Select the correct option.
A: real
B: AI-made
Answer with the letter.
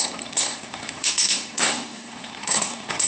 B